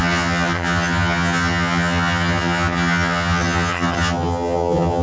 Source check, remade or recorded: remade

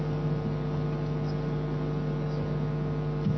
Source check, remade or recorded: recorded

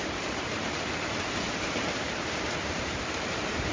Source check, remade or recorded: remade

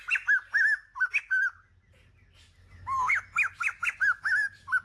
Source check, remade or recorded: recorded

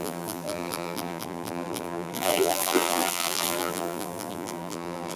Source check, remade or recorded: remade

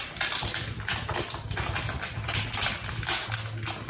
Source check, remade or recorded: recorded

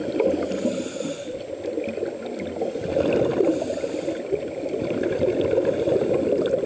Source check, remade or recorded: recorded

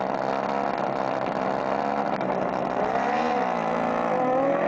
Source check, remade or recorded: recorded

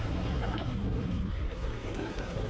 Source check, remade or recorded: remade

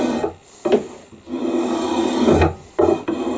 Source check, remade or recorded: recorded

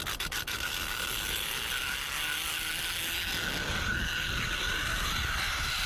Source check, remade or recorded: recorded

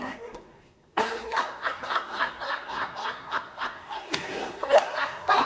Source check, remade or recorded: remade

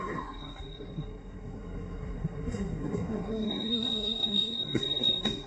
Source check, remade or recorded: remade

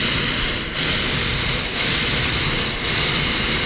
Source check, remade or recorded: recorded